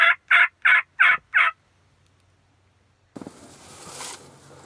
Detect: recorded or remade recorded